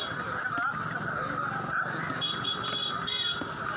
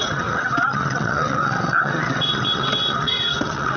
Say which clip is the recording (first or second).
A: first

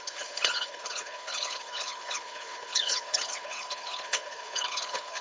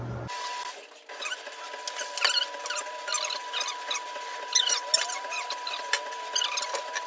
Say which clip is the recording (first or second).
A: second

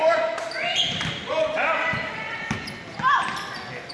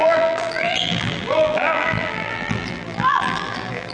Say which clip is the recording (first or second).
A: first